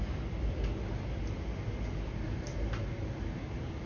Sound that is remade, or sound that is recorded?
recorded